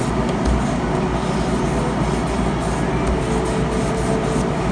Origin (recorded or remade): recorded